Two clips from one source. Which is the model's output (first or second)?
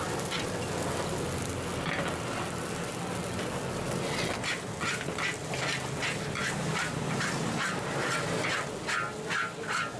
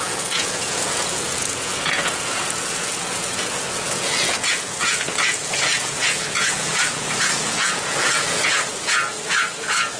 second